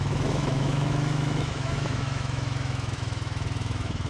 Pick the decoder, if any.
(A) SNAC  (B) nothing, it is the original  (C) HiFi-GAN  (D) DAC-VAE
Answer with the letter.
D